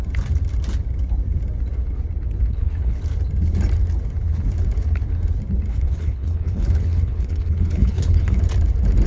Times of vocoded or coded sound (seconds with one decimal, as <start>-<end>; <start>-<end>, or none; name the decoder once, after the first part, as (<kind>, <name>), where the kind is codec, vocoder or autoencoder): 2.5-3.0 (codec, HILCodec); 5.7-8.4